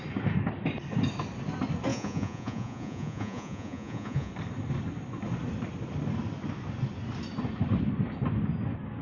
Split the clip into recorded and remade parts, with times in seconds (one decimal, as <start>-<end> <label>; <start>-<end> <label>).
0.0-1.9 recorded; 1.9-4.3 remade; 4.3-9.0 recorded